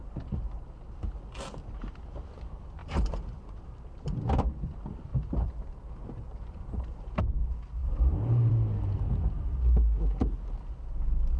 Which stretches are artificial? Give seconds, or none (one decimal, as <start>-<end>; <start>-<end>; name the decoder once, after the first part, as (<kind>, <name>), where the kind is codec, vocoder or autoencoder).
2.8-3.6 (vocoder, BigVGAN v2); 5.1-7.2; 7.8-8.5